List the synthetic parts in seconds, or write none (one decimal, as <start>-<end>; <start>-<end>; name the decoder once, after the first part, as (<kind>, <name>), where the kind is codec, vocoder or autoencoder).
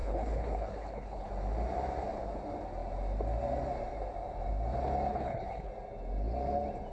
0.0-1.3 (codec, HILCodec); 5.1-5.7